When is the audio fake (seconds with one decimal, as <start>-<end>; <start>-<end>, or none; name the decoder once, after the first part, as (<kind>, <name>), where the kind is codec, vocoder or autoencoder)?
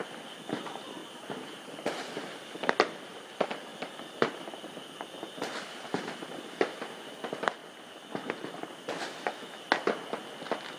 3.7-4.3 (vocoder, BigVGAN v2)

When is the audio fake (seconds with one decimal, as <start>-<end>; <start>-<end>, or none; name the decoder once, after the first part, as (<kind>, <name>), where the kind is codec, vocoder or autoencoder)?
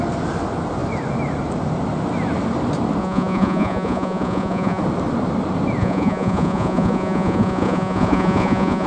3.0-4.8 (vocoder, Vocos); 5.8-8.9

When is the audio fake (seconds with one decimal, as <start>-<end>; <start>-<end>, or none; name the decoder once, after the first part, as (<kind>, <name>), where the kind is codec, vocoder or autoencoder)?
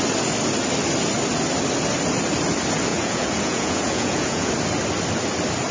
2.9-4.5 (vocoder, Vocos)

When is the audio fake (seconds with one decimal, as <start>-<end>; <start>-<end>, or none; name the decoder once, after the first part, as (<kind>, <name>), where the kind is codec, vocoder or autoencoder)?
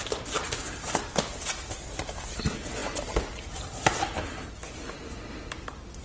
none